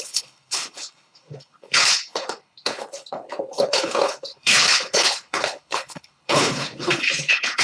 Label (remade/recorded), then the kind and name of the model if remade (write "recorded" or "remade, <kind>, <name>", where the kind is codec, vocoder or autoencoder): remade, codec, HILCodec